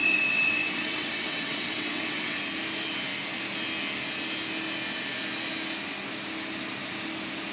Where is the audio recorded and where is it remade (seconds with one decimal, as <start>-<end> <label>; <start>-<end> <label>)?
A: 0.0-2.4 remade; 2.4-7.5 recorded